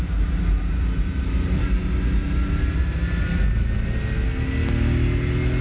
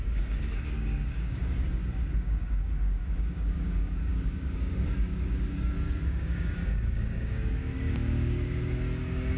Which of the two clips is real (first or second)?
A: first